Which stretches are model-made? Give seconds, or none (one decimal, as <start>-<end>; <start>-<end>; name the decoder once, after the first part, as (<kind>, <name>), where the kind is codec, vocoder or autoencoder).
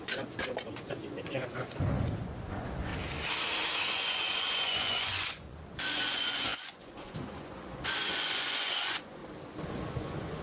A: 0.0-2.9 (vocoder, Vocos); 3.9-9.2; 9.9-10.4